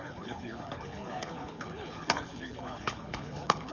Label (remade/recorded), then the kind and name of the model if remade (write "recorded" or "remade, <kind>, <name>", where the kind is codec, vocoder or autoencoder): remade, codec, HILCodec